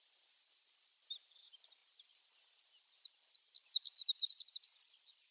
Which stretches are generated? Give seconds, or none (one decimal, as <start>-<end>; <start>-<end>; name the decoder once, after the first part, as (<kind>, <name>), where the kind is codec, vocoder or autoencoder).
none